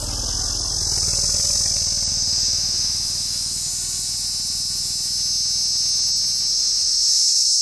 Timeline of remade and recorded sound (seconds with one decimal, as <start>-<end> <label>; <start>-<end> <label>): 0.0-2.1 recorded; 2.1-3.7 remade; 3.7-6.5 recorded; 6.5-7.6 remade